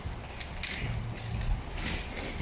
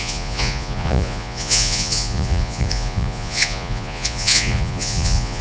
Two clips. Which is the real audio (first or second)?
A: first